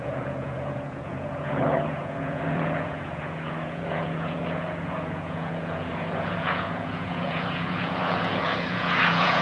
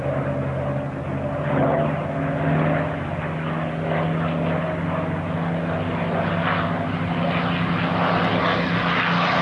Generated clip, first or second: first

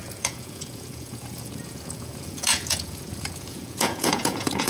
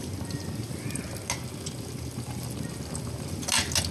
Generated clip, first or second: first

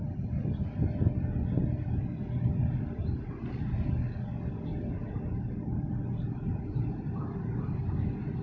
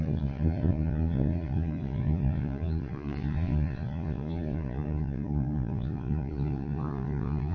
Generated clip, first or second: second